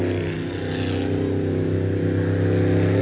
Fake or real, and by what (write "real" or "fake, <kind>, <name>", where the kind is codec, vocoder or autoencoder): real